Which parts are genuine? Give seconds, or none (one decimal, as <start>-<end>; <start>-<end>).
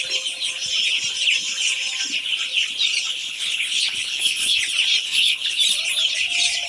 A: 0.0-3.1; 4.6-5.0; 5.6-6.7